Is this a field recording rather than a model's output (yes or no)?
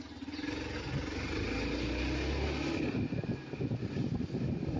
yes